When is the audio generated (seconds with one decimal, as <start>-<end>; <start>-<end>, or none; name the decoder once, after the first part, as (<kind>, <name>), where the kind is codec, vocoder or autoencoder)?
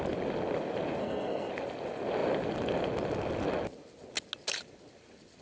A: 1.0-1.5 (codec, SNAC)